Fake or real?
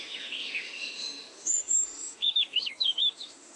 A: fake